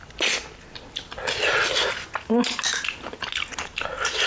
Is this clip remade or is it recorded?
recorded